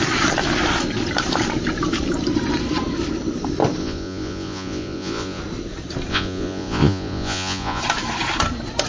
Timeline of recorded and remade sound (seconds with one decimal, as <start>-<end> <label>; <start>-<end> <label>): 0.0-3.8 recorded; 3.8-5.4 remade; 5.4-6.1 recorded; 6.1-7.8 remade; 7.8-8.9 recorded